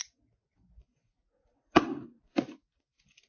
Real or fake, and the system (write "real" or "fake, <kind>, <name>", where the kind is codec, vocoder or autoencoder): real